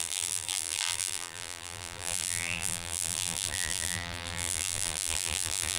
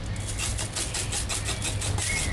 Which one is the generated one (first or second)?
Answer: first